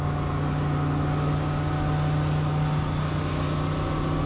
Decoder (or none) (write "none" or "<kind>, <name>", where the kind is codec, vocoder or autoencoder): none